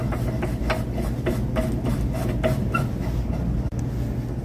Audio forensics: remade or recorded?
recorded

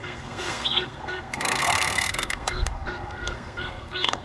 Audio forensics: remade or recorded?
remade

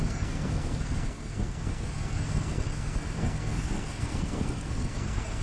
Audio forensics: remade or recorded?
remade